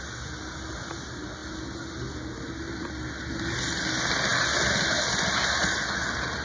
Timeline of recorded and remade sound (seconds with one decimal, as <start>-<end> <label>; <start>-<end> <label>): 0.0-6.4 recorded